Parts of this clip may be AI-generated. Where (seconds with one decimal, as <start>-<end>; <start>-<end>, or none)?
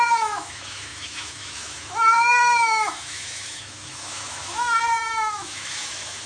0.0-6.3